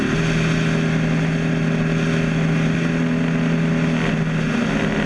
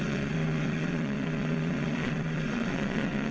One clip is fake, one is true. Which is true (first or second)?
first